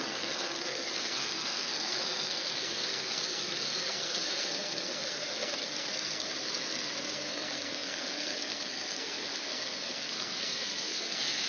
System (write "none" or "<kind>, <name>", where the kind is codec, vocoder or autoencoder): codec, SNAC